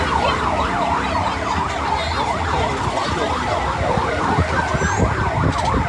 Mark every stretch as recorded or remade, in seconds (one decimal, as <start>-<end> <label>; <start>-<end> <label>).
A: 0.0-5.9 recorded